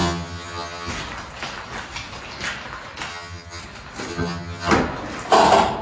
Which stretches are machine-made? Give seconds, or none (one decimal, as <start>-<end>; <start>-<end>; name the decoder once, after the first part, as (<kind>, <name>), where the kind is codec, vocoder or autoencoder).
0.0-0.9 (vocoder, HiFi-GAN); 3.1-3.6; 4.1-4.7